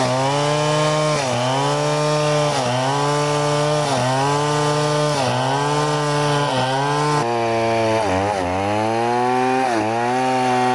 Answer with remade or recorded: recorded